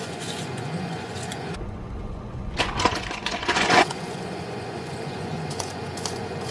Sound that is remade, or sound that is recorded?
remade